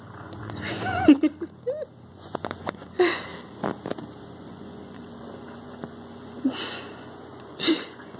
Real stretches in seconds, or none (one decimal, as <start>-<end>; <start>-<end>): 1.3-2.1; 3.3-4.2